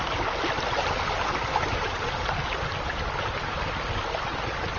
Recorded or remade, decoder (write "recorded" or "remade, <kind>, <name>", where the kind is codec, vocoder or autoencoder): recorded